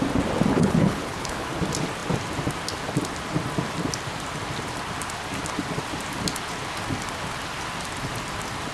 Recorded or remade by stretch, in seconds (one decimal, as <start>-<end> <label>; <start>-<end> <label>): 0.0-0.5 recorded; 0.5-1.5 remade; 1.5-8.7 recorded